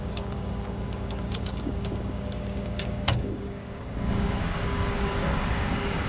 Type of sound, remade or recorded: remade